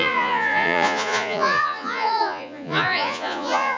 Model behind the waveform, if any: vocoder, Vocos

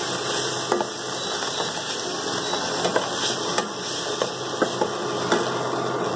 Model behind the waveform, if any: none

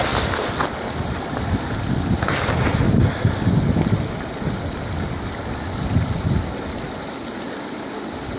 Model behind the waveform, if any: none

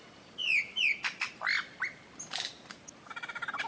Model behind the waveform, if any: none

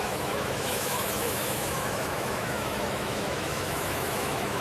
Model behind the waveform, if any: autoencoder, DAC-VAE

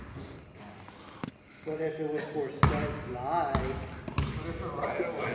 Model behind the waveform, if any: none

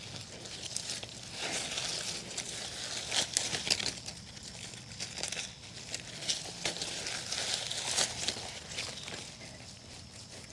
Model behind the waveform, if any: none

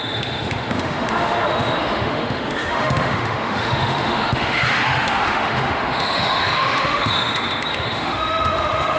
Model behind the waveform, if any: autoencoder, DAC-VAE